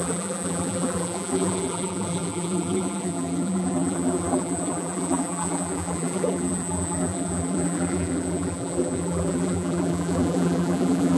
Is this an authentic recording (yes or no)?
no